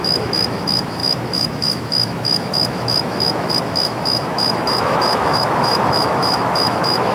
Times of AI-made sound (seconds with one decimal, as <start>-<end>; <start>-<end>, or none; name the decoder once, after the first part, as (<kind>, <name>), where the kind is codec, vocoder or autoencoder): 0.0-7.1 (autoencoder, DAC-VAE)